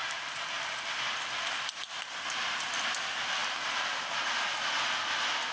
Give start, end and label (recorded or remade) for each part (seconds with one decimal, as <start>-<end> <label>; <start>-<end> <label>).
0.0-5.5 recorded